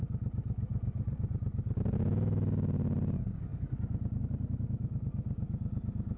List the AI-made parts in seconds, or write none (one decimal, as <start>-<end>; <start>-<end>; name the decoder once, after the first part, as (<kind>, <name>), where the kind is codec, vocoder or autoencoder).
0.7-1.3 (vocoder, BigVGAN v2)